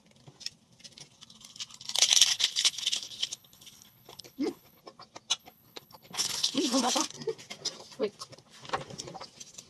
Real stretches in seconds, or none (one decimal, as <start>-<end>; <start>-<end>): 0.0-2.3; 4.8-5.4; 6.9-9.7

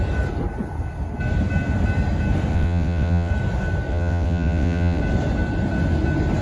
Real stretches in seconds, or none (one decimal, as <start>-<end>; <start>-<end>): 0.0-2.5; 3.3-3.9; 5.0-6.4